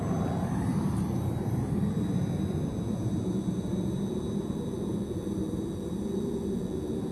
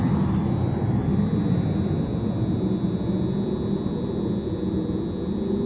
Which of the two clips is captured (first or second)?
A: second